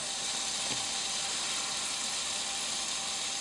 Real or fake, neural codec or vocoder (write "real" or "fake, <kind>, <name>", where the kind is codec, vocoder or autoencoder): fake, vocoder, BigVGAN v2